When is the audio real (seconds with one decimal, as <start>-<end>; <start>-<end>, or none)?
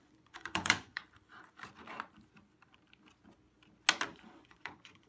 1.0-4.1